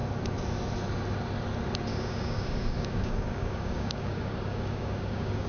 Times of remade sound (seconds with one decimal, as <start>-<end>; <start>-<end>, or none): 1.9-5.5